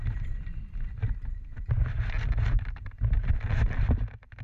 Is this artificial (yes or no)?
no